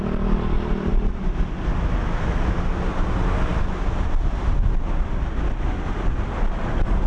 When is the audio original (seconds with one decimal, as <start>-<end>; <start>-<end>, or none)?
0.0-7.1